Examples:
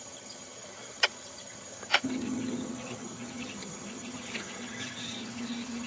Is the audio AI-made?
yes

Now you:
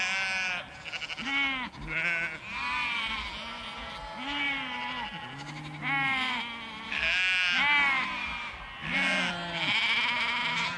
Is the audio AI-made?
no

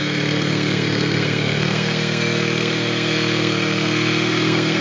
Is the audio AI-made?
yes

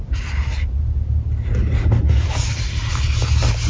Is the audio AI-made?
no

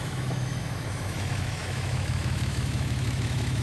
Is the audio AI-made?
yes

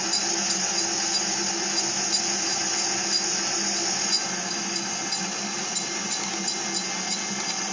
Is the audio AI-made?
no